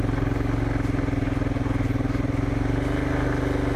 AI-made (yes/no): no